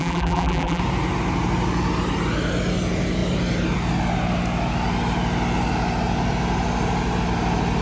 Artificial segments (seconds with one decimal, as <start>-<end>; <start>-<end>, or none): 0.0-0.8